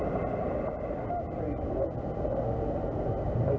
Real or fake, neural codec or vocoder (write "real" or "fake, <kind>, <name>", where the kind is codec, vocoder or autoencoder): real